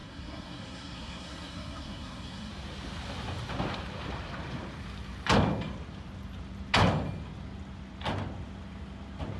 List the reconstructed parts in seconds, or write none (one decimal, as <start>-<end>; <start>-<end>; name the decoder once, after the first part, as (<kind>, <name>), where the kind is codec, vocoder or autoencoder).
0.0-2.5 (codec, SNAC)